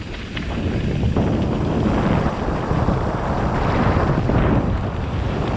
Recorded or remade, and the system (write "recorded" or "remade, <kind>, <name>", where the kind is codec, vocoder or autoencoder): recorded